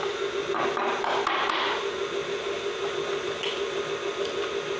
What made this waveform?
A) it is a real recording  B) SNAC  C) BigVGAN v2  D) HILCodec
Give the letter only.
A